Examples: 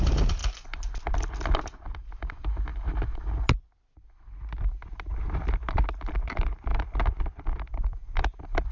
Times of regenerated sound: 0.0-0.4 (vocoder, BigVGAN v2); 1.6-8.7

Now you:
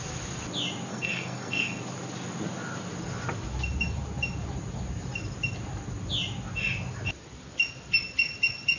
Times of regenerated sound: 0.9-1.8 (codec, SNAC)

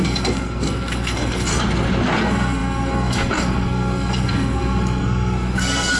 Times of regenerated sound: 0.0-1.5 (codec, SNAC); 2.2-6.0

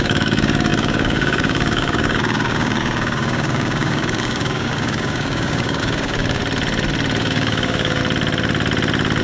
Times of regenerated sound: 0.0-6.4 (codec, DAC); 7.2-8.0

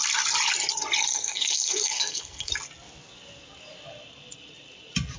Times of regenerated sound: 1.1-2.5 (codec, SNAC)

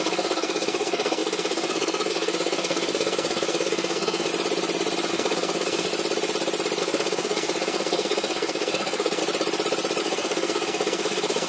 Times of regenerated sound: 0.0-4.3 (codec, SNAC); 5.1-5.9; 6.8-9.2; 10.0-11.5

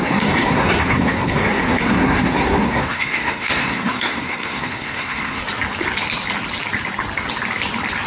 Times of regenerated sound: 0.0-5.4 (codec, SNAC)